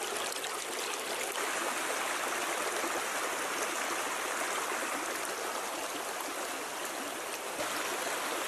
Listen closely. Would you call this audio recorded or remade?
recorded